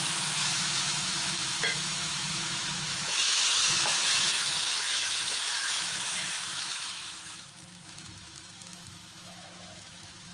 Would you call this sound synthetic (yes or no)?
yes